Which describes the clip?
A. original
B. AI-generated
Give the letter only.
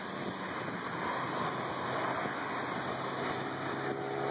A